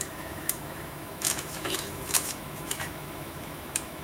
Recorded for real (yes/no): no